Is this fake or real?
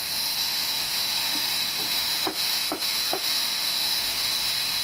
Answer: fake